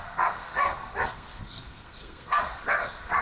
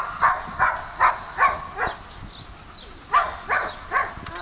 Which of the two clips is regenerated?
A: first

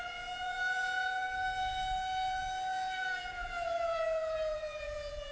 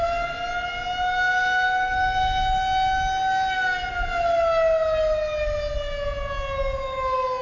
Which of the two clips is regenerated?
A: first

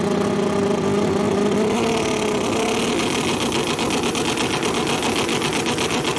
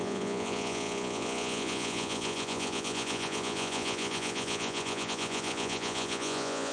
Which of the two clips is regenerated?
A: second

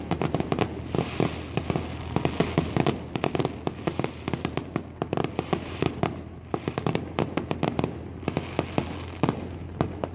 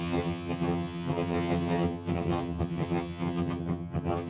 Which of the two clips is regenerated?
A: second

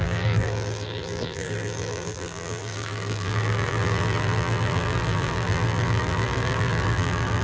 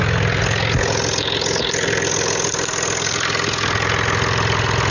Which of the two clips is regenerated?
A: first